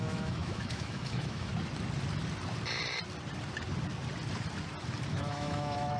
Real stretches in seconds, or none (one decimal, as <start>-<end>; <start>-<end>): 1.5-5.1